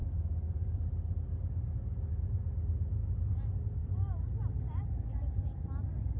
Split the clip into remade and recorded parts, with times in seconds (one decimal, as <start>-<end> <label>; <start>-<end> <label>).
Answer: 0.0-6.2 recorded